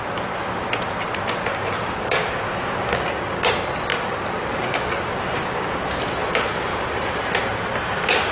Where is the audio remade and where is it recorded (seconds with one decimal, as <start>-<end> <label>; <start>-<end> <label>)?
0.0-1.5 recorded; 1.5-3.5 remade; 3.5-3.9 recorded; 3.9-6.0 remade; 6.0-8.3 recorded